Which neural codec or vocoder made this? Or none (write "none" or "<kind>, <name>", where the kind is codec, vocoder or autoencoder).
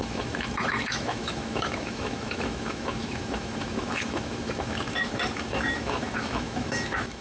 autoencoder, DAC-VAE